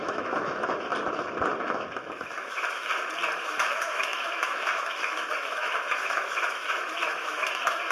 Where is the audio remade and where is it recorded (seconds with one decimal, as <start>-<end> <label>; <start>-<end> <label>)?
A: 0.0-0.9 remade; 0.9-1.6 recorded; 1.6-2.9 remade; 2.9-3.4 recorded; 3.4-7.9 remade